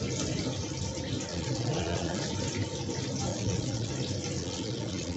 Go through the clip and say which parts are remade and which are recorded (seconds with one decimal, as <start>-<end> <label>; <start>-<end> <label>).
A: 0.0-1.3 recorded; 1.3-2.2 remade; 2.2-3.3 recorded; 3.3-3.9 remade; 3.9-4.4 recorded; 4.4-5.2 remade